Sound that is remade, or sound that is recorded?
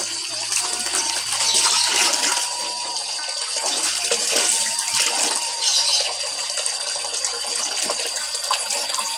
recorded